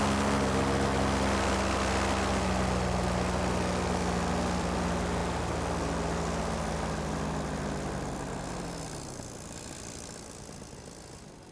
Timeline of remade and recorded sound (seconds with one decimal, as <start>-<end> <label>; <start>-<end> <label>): 0.0-11.5 recorded